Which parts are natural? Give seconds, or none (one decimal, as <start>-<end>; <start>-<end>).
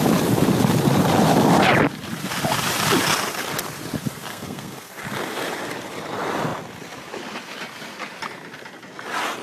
0.0-4.3; 4.9-9.4